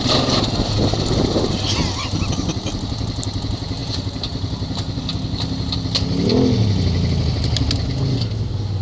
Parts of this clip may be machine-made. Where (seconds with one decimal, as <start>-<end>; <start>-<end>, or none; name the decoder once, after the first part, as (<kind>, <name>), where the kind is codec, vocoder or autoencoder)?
none